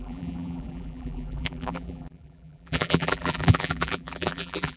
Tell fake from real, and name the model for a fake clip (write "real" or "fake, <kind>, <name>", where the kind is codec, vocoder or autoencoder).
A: fake, vocoder, BigVGAN v2